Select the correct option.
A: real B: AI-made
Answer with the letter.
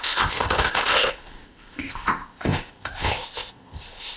B